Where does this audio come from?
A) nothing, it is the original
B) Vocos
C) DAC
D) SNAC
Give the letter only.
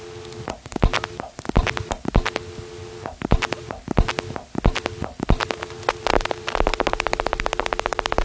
A